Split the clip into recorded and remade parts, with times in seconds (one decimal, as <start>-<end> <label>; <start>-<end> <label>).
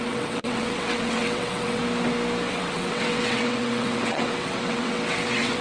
0.0-1.8 remade; 1.8-2.5 recorded; 2.5-5.6 remade